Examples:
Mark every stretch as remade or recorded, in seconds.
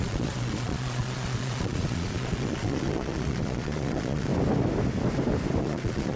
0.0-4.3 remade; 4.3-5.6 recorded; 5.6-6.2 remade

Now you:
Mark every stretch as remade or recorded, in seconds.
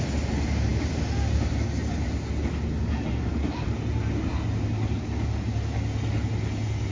0.0-6.9 recorded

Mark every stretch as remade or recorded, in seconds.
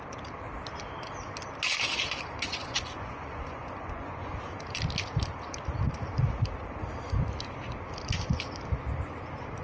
0.0-2.5 recorded; 2.5-4.3 remade; 4.3-9.6 recorded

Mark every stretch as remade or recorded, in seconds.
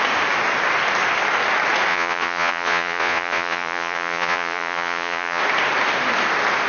0.0-1.9 recorded; 1.9-5.4 remade; 5.4-6.7 recorded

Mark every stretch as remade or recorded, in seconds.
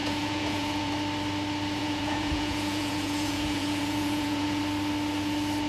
0.0-0.9 remade; 0.9-1.8 recorded; 1.8-4.6 remade; 4.6-5.7 recorded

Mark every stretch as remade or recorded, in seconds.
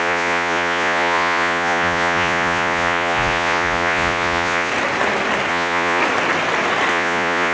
0.0-4.7 remade; 4.7-5.5 recorded; 5.5-6.0 remade; 6.0-6.9 recorded; 6.9-7.5 remade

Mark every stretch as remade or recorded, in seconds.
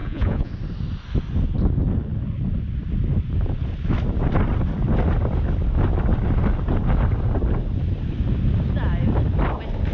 0.0-0.5 remade; 0.5-9.9 recorded